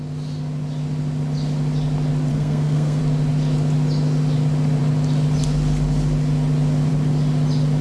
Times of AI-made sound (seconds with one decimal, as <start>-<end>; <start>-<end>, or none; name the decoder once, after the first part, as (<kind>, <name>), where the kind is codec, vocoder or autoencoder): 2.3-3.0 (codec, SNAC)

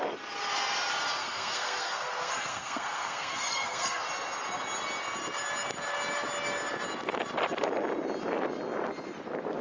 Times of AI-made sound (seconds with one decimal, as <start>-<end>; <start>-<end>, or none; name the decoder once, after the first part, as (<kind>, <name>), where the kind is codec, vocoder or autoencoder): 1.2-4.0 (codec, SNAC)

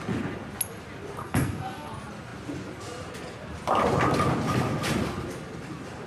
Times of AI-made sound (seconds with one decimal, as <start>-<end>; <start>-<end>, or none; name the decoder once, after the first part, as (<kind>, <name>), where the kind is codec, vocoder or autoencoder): 1.2-1.9 (codec, SNAC)